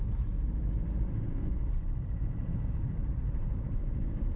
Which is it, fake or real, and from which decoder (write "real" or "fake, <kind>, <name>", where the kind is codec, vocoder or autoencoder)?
fake, vocoder, BigVGAN v2